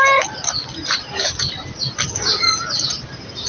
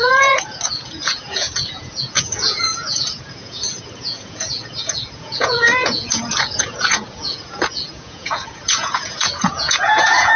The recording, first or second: first